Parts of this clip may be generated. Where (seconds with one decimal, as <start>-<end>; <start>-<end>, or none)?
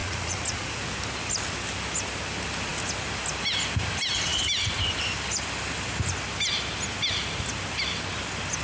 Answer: 0.0-0.8